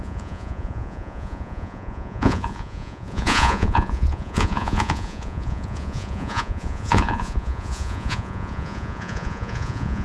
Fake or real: fake